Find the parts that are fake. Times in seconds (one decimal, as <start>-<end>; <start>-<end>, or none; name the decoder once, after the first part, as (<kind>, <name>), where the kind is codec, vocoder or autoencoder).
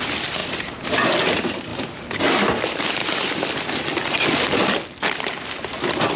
none